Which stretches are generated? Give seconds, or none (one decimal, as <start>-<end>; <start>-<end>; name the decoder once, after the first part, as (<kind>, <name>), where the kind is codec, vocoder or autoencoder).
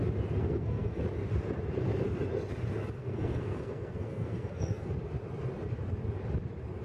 0.4-1.0 (codec, SNAC); 3.0-4.9